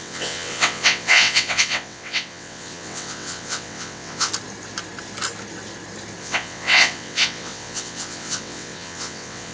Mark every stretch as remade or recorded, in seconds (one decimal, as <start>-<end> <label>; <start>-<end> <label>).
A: 0.0-4.3 remade; 4.3-6.2 recorded; 6.2-9.5 remade